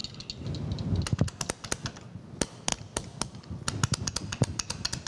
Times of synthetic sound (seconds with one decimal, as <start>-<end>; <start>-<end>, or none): none